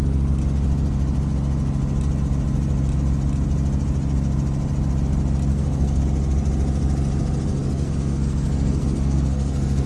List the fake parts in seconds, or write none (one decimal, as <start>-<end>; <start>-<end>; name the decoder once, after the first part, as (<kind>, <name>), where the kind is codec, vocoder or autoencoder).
5.5-6.0 (codec, SNAC); 7.5-9.9